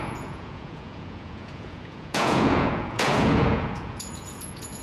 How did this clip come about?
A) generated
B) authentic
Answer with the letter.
A